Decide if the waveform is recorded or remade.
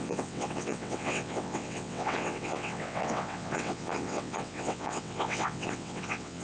remade